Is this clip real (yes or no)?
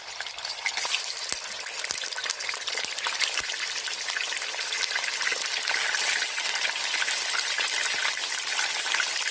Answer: yes